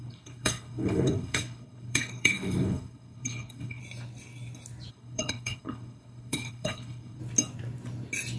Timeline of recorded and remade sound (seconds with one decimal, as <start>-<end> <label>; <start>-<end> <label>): 0.0-3.8 remade; 3.8-4.9 recorded; 4.9-7.2 remade; 7.2-8.4 recorded